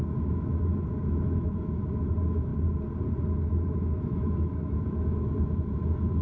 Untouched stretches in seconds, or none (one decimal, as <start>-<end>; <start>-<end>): 2.5-3.5